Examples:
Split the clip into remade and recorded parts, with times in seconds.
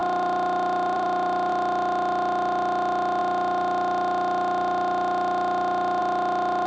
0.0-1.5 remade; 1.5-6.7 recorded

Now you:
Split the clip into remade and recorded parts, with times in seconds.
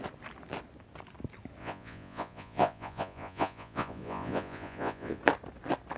0.0-1.6 recorded; 1.6-5.2 remade; 5.2-6.0 recorded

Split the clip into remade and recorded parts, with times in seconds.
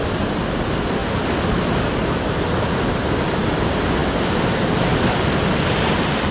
0.0-6.3 recorded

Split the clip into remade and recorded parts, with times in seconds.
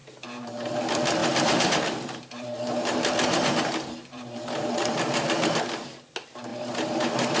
0.0-0.7 remade; 0.7-1.2 recorded; 1.2-5.6 remade; 5.6-6.5 recorded; 6.5-7.4 remade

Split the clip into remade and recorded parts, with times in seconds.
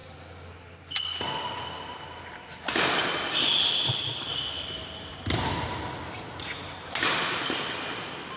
0.0-8.4 recorded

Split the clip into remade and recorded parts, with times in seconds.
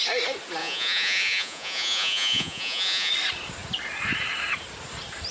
0.0-0.6 recorded; 0.6-3.1 remade; 3.1-5.3 recorded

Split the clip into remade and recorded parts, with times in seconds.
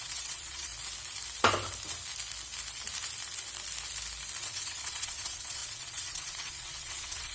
0.0-0.7 remade; 0.7-4.4 recorded; 4.4-7.3 remade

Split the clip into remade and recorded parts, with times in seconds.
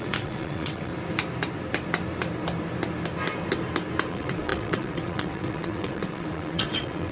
0.0-0.9 remade; 0.9-4.1 recorded; 4.1-7.1 remade